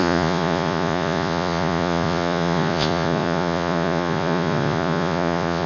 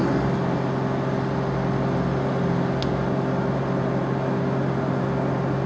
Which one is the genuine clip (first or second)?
second